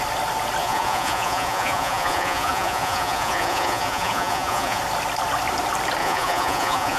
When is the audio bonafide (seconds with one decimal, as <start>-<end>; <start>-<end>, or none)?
0.0-0.6; 4.8-6.0